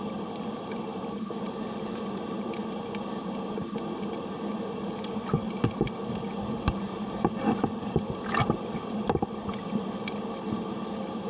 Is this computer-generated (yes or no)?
no